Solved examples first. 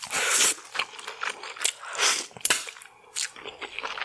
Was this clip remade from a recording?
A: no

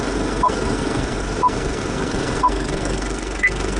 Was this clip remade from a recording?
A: yes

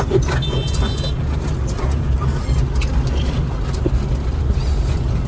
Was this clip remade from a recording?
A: no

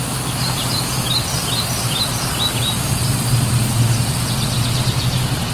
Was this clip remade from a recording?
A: no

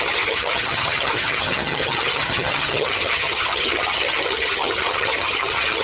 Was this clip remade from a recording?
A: yes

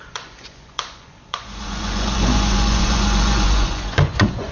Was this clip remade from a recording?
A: yes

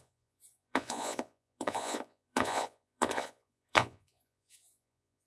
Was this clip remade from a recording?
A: yes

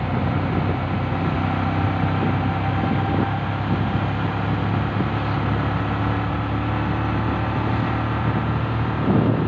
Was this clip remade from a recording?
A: no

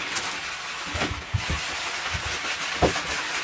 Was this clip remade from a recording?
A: no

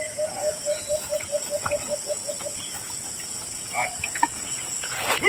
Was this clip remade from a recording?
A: yes